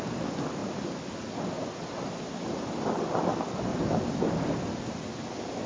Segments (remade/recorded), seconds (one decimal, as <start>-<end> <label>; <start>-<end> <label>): 0.0-3.7 recorded; 3.7-4.4 remade; 4.4-5.7 recorded